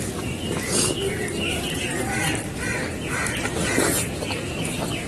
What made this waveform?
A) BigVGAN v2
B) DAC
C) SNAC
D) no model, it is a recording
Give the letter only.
D